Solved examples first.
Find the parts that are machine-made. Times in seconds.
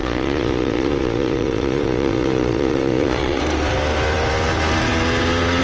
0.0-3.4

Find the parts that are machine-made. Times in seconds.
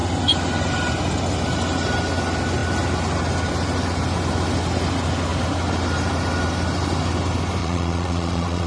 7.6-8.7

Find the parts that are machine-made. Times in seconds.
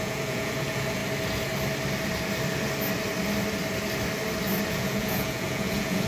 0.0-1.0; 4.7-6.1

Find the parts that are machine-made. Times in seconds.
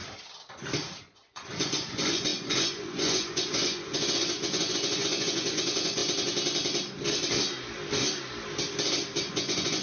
1.0-6.0; 9.3-9.8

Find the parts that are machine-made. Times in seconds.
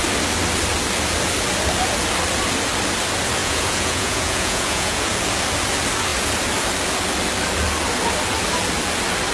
3.4-5.0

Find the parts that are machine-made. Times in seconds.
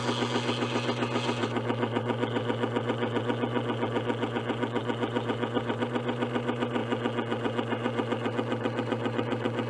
1.4-5.8; 6.8-9.7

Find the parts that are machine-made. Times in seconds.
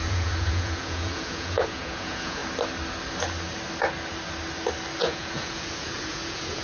0.0-2.4; 5.0-6.6